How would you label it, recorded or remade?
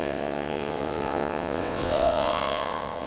remade